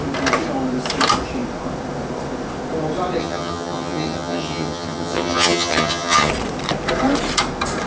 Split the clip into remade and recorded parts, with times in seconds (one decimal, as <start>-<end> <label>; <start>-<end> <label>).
0.0-3.2 recorded; 3.2-6.3 remade; 6.3-7.9 recorded